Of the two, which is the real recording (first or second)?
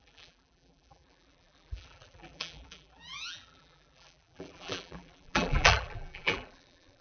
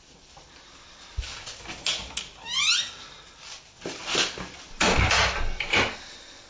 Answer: second